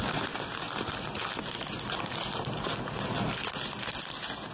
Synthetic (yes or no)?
no